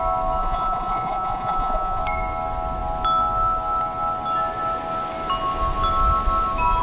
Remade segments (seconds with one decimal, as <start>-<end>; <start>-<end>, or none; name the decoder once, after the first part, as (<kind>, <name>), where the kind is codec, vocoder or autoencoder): 0.4-2.0 (vocoder, Vocos)